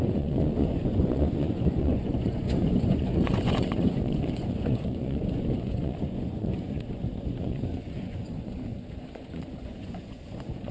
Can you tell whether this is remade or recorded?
remade